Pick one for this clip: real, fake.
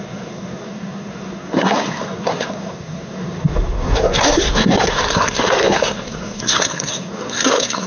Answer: fake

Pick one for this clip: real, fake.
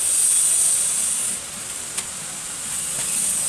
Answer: real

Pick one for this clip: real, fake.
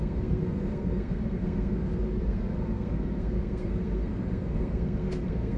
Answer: fake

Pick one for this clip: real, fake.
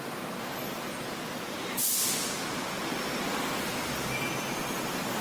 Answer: real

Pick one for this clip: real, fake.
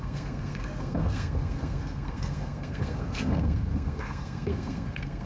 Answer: fake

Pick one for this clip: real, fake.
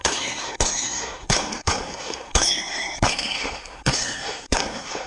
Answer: fake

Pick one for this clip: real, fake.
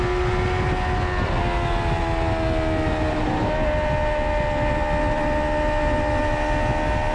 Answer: real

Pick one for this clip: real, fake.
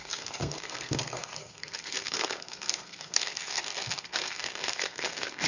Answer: fake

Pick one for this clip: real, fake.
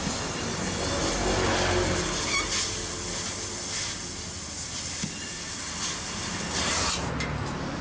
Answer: real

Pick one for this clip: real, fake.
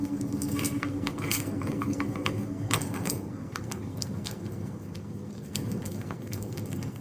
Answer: fake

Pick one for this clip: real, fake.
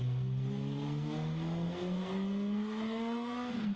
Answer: fake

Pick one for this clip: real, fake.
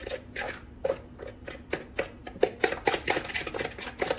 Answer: real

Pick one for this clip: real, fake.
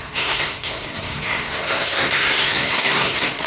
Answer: fake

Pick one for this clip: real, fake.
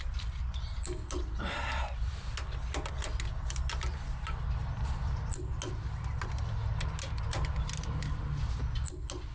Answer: real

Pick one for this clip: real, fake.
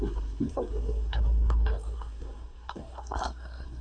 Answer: fake